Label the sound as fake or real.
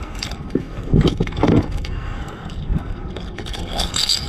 fake